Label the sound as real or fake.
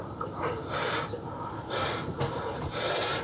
fake